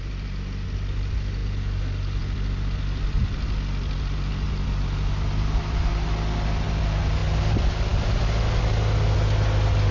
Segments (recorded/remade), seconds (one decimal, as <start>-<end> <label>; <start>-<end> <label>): 0.0-9.9 recorded